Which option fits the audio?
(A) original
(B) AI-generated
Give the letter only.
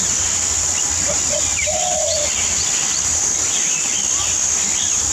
A